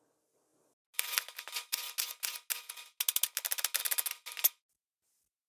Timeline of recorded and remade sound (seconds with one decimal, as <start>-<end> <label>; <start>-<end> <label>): 0.0-5.5 recorded